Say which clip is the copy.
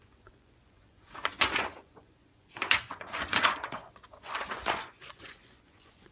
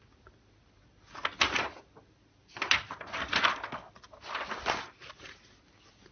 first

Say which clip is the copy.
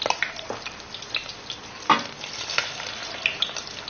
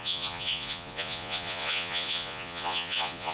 second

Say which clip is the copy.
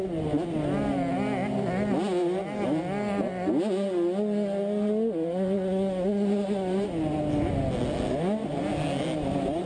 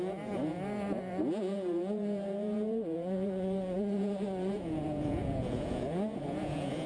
second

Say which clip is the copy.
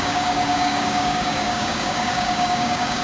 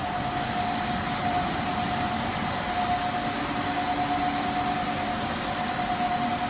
first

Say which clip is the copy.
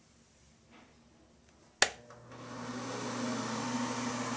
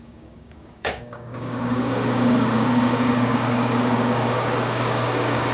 second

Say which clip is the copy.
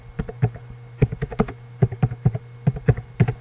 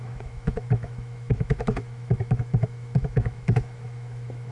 second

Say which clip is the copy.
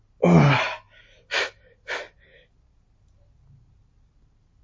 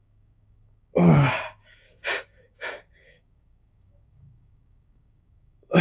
second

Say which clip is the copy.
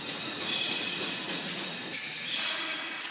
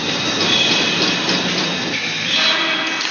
first